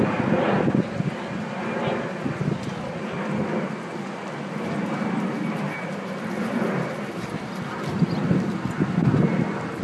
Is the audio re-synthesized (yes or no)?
no